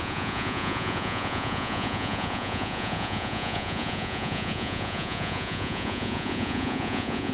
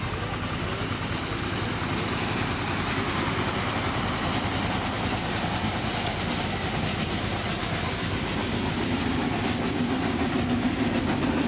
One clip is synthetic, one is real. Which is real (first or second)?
second